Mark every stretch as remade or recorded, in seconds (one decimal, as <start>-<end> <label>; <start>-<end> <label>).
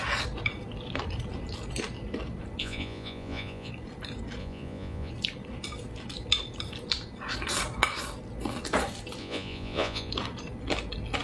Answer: 0.0-2.6 recorded; 2.6-3.7 remade; 3.7-4.4 recorded; 4.4-5.1 remade; 5.1-9.2 recorded; 9.2-10.1 remade; 10.1-11.2 recorded